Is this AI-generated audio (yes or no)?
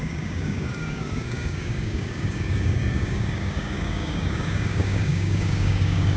yes